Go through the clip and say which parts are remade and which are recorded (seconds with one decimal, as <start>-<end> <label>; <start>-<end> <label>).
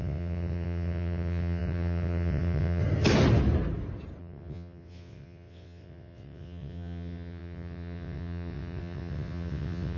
0.0-2.8 remade; 2.8-4.2 recorded; 4.2-10.0 remade